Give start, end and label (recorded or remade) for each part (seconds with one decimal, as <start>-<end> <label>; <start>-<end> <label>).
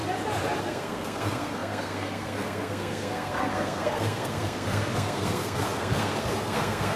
0.0-0.6 recorded; 0.6-7.0 remade